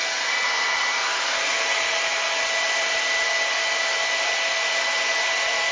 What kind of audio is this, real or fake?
real